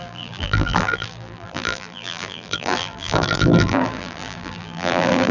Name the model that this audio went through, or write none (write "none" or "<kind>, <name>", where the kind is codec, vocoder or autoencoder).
vocoder, BigVGAN v2